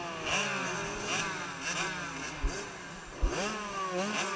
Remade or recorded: recorded